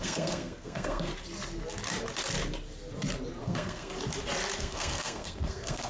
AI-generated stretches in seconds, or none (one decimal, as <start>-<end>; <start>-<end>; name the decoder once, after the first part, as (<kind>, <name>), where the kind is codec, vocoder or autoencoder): 0.0-1.1 (codec, SNAC); 3.4-3.9; 4.6-5.9